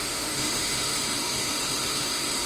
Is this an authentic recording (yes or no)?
no